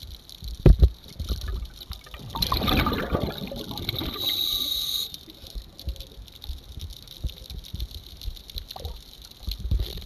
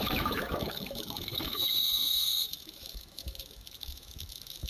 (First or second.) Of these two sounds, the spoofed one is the second